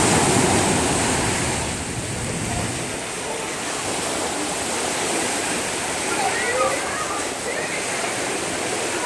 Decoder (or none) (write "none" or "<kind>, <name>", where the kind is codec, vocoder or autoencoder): none